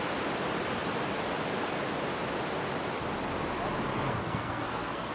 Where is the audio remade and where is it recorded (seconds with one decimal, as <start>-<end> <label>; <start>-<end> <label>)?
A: 0.0-3.9 recorded; 3.9-5.1 remade